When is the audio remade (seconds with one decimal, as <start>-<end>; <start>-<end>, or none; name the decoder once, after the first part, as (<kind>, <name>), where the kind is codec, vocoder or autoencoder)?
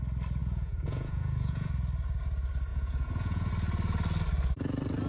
0.4-1.7 (vocoder, Vocos); 2.7-3.5